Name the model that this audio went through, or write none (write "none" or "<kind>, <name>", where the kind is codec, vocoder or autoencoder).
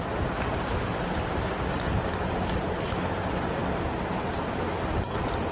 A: none